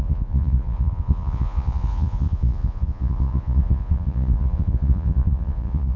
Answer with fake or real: fake